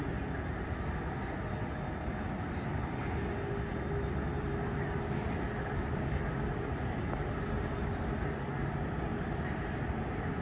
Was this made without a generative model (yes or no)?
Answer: yes